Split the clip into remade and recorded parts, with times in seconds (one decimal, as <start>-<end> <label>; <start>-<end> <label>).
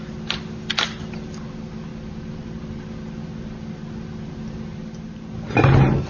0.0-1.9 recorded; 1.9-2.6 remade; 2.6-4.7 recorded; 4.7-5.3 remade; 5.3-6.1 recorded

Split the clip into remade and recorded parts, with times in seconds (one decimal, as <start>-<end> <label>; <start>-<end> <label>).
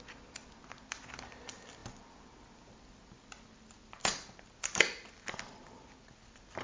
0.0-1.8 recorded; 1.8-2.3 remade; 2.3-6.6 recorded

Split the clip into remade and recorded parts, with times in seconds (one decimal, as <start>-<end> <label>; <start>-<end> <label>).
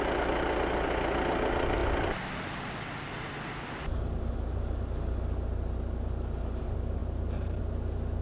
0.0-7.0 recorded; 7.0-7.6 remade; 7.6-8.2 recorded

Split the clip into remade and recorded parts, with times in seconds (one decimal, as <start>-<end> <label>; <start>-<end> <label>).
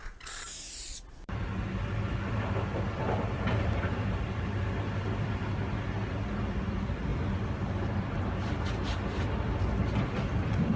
0.0-4.6 remade; 4.6-7.1 recorded; 7.1-9.6 remade; 9.6-10.8 recorded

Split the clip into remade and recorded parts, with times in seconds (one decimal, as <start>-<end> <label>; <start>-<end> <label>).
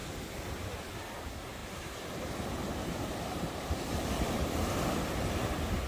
0.0-1.6 recorded; 1.6-5.0 remade; 5.0-5.9 recorded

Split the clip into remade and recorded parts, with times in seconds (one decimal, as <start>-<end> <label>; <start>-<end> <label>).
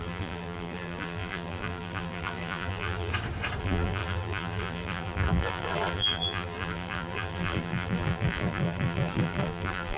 0.0-3.1 remade; 3.1-3.6 recorded; 3.6-10.0 remade